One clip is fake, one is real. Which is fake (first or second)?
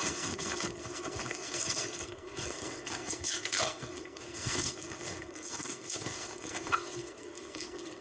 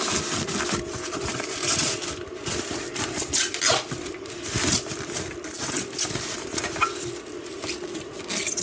first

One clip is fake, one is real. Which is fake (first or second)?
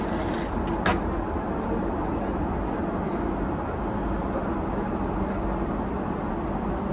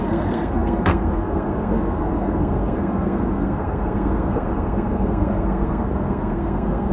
second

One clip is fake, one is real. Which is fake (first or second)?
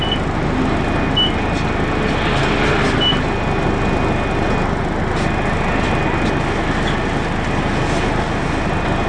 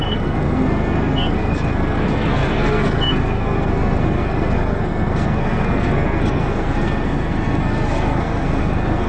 second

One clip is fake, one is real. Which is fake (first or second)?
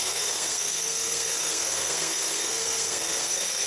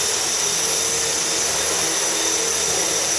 first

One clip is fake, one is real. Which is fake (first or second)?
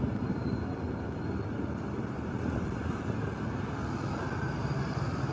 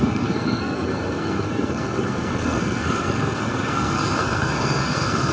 second